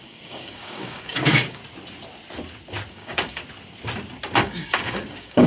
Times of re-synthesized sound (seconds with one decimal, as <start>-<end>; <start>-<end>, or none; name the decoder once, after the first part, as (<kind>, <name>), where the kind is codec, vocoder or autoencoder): 0.0-1.6 (codec, DAC); 2.9-3.4; 4.4-5.5